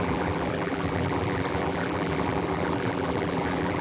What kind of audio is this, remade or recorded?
remade